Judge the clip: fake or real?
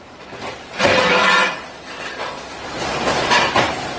fake